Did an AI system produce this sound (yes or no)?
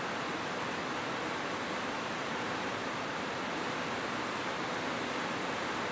no